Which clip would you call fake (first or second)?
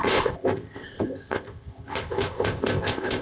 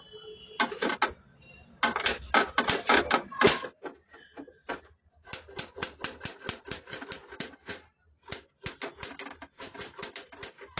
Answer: first